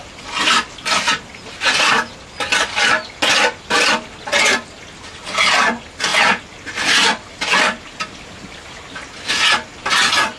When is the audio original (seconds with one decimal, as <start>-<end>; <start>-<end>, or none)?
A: 0.0-10.4